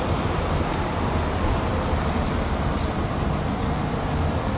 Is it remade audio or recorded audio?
remade